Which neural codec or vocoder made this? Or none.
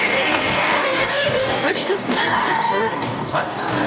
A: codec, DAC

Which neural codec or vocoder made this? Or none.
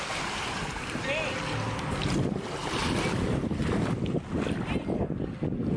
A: none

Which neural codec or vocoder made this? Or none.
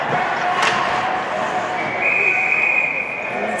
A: none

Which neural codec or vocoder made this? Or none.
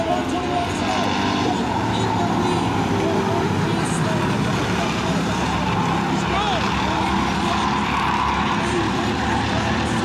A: none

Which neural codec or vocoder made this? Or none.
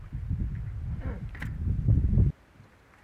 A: none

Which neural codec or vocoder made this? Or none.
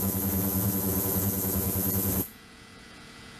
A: vocoder, Vocos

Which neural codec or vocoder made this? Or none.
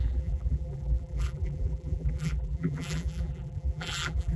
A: vocoder, BigVGAN v2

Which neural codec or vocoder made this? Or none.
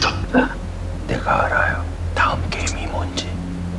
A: none